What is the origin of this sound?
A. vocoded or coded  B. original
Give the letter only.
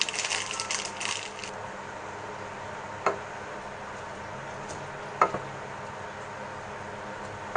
B